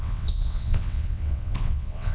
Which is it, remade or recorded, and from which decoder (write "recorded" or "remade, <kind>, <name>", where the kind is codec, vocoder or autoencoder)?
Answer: remade, vocoder, WaveNeXt